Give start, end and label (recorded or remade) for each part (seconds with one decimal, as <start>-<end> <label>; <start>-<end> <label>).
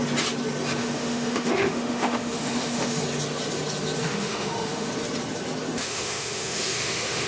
0.0-0.8 recorded; 0.8-3.0 remade; 3.0-4.0 recorded; 4.0-4.9 remade; 4.9-5.8 recorded; 5.8-7.3 remade